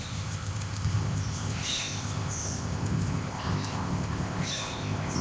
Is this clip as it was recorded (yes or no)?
no